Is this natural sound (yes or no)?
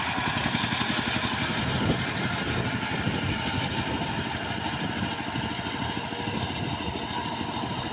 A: yes